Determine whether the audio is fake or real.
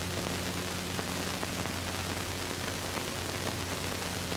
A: real